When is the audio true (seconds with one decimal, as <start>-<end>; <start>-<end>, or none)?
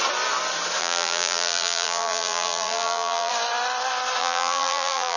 0.0-0.8; 3.3-4.2